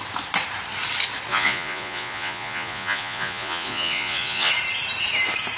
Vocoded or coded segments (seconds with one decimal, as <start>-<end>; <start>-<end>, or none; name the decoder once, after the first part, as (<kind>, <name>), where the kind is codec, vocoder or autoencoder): 1.3-4.5 (vocoder, Vocos)